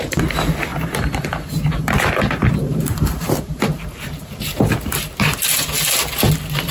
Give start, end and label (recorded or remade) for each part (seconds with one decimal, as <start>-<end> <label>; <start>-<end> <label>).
0.0-0.7 recorded; 0.7-4.7 remade; 4.7-6.7 recorded